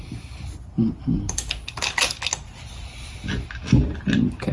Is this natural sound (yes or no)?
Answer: yes